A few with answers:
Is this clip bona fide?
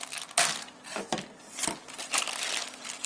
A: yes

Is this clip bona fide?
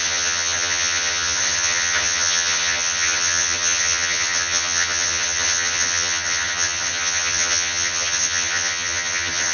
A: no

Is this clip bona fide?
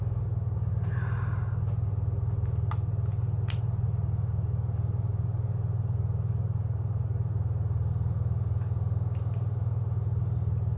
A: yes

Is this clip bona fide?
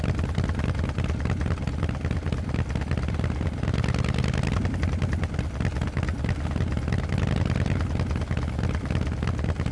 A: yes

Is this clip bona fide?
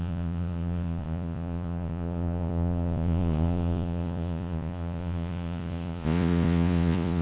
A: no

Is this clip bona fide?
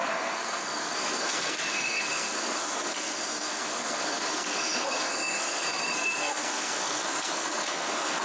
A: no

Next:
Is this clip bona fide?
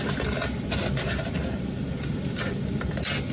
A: yes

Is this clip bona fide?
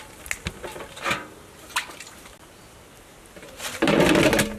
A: yes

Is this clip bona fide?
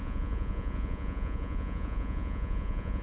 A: no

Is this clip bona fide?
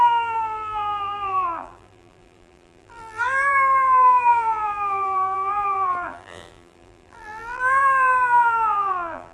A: no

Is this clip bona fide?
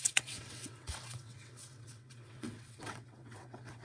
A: no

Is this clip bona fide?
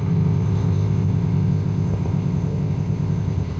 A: no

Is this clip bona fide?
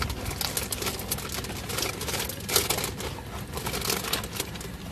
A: yes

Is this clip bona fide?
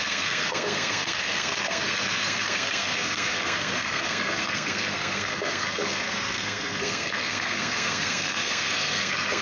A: no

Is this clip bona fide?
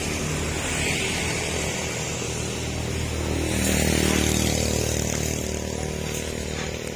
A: yes